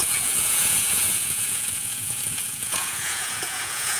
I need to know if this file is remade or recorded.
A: remade